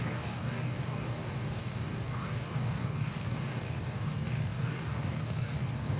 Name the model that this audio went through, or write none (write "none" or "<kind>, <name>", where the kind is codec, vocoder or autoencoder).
codec, DAC